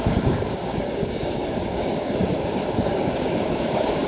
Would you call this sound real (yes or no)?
no